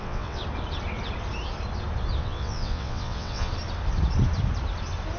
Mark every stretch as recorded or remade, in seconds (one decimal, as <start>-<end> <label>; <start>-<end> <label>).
0.0-0.4 remade; 0.4-2.2 recorded; 2.2-3.5 remade; 3.5-5.2 recorded